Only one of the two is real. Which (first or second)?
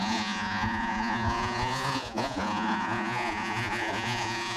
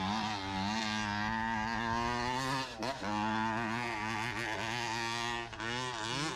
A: second